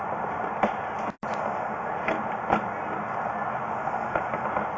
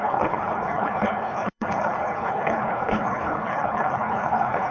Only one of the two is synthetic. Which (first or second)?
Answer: second